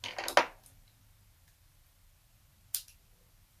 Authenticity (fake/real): real